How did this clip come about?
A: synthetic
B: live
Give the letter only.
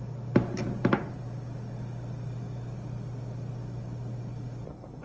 B